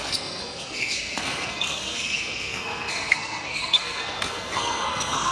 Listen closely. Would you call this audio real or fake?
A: fake